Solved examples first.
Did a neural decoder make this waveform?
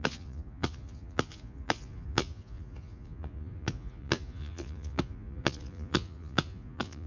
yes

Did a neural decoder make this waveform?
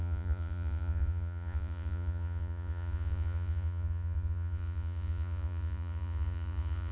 yes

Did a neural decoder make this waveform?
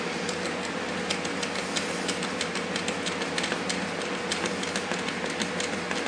no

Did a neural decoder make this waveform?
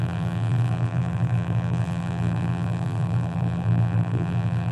yes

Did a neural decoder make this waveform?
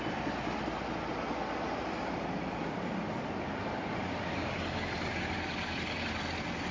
no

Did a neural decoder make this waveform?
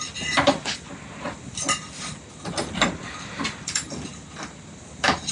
no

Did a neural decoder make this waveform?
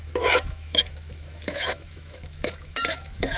yes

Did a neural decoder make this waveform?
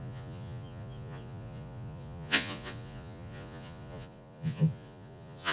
yes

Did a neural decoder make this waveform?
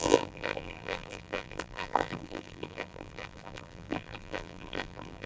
yes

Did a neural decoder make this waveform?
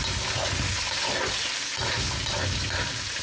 no